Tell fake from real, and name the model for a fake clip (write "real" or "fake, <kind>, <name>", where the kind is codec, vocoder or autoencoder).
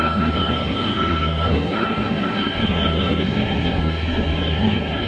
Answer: fake, codec, SNAC